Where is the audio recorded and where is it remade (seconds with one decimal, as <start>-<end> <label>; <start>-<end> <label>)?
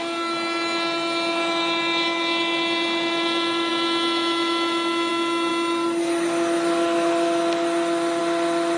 0.0-8.8 recorded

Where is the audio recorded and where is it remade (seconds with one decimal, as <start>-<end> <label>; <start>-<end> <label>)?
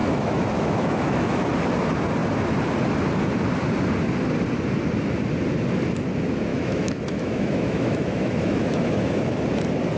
0.0-1.5 remade; 1.5-6.5 recorded; 6.5-9.4 remade; 9.4-10.0 recorded